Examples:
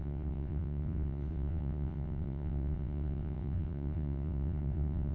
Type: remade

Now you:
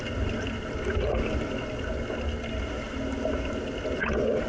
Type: recorded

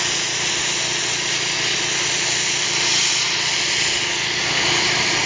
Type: recorded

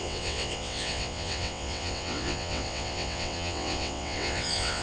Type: remade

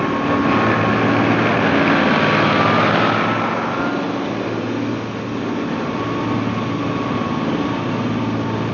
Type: recorded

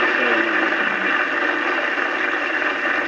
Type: recorded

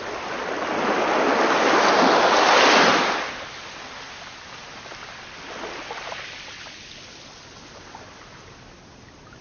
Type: recorded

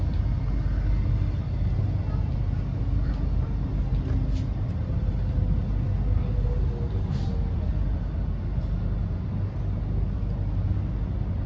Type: recorded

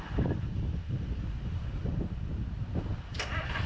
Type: recorded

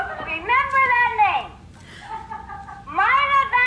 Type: recorded